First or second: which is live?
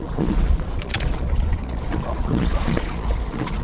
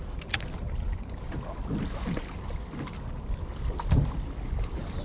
second